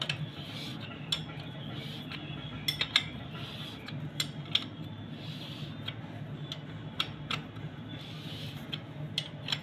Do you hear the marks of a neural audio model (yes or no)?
no